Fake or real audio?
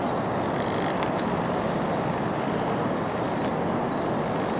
real